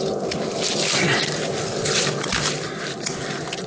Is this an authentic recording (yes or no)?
no